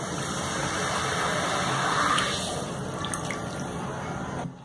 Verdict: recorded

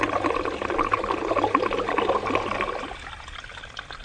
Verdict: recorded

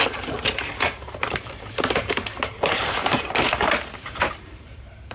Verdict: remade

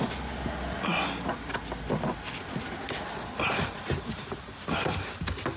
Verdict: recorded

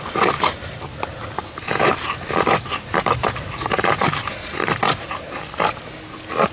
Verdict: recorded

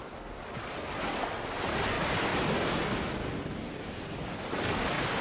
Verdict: recorded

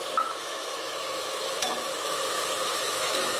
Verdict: remade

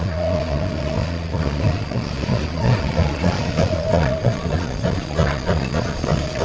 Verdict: remade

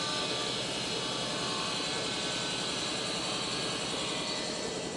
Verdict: recorded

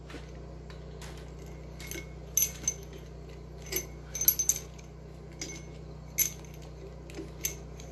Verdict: recorded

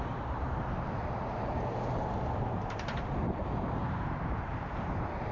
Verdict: remade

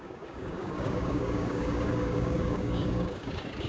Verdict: remade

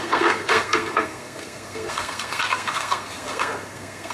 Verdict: remade